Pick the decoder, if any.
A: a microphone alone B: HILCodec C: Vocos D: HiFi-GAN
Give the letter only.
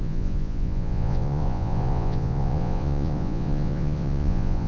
C